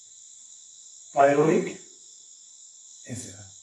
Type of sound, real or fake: fake